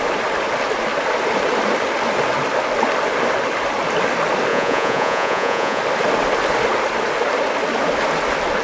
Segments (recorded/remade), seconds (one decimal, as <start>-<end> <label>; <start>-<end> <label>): 0.0-4.5 recorded; 4.5-5.8 remade; 5.8-8.6 recorded